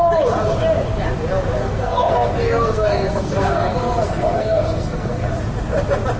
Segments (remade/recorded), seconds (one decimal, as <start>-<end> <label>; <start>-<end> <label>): 0.0-1.6 recorded; 1.6-5.3 remade; 5.3-6.2 recorded